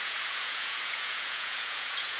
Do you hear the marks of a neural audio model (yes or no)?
yes